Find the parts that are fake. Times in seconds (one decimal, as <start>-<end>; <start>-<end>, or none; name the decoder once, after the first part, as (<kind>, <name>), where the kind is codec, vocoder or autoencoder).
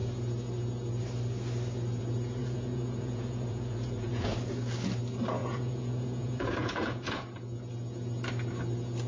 2.4-4.3 (vocoder, Vocos); 5.4-7.2